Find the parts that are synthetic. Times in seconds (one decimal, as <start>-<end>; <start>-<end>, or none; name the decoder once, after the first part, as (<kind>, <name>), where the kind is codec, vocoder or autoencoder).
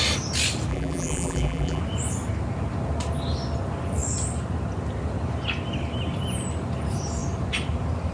0.7-1.8 (vocoder, BigVGAN v2)